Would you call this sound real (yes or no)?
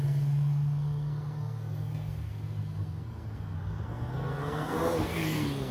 no